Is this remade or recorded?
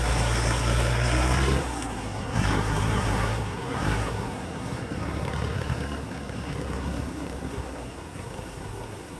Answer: remade